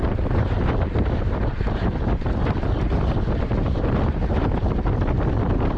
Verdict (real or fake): real